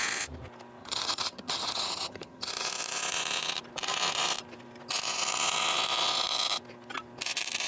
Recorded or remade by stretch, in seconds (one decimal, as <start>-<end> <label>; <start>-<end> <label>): 0.0-0.8 recorded; 0.8-2.5 remade; 2.5-7.7 recorded